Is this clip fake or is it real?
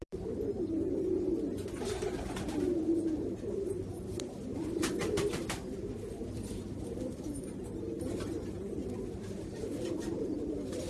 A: fake